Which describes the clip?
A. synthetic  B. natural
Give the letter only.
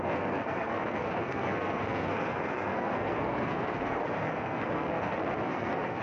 A